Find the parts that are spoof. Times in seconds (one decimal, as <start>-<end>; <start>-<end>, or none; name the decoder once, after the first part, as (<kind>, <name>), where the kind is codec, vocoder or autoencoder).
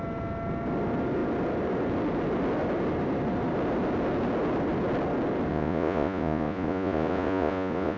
5.5-8.0 (vocoder, Vocos)